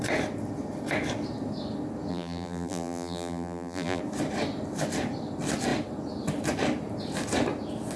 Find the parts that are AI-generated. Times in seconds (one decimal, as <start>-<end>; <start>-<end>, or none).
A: 2.1-4.0